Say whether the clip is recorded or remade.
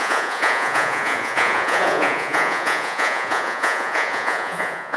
remade